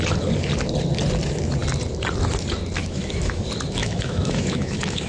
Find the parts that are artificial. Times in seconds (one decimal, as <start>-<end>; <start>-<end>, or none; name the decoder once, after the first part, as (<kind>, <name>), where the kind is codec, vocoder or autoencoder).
2.8-3.4 (autoencoder, DAC-VAE); 3.8-5.1